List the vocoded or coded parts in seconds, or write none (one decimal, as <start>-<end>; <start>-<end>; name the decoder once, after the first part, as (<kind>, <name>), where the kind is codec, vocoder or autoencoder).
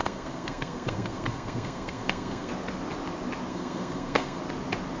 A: 0.0-2.5 (codec, SNAC); 3.5-4.4